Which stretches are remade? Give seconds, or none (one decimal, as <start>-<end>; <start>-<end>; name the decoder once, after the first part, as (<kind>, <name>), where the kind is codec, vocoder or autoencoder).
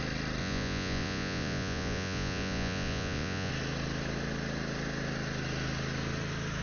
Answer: 0.4-3.5 (vocoder, Vocos)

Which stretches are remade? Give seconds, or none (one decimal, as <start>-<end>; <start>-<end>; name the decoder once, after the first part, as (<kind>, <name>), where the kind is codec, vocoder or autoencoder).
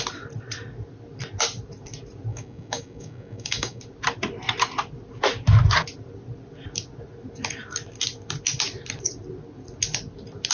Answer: 2.3-3.8 (codec, DAC)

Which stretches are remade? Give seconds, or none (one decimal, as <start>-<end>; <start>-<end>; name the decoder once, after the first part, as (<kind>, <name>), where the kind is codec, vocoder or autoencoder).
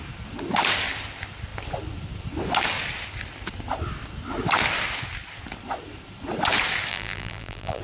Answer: 6.9-7.8 (vocoder, BigVGAN v2)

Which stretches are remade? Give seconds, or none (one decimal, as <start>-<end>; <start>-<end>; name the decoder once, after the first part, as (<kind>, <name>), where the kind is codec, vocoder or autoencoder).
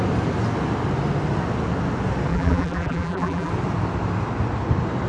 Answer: 2.3-3.5 (vocoder, BigVGAN v2)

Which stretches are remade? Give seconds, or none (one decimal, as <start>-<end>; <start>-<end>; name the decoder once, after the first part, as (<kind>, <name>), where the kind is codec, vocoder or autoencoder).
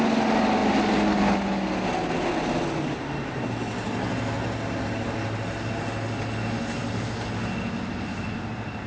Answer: none